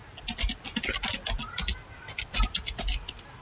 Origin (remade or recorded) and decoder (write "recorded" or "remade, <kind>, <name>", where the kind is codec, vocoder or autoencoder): recorded